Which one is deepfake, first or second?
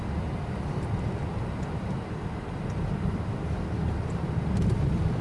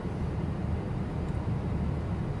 first